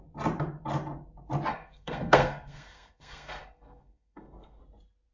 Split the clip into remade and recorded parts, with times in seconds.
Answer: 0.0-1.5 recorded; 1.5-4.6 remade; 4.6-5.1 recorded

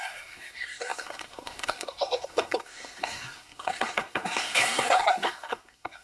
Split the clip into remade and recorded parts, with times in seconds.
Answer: 0.0-6.0 remade

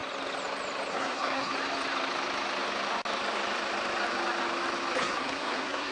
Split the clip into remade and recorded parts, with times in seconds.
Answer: 0.0-0.9 recorded; 0.9-1.5 remade; 1.5-5.0 recorded; 5.0-5.9 remade

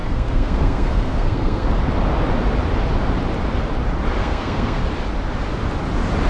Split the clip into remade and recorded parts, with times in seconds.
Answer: 0.0-1.7 remade; 1.7-4.2 recorded; 4.2-4.8 remade; 4.8-6.3 recorded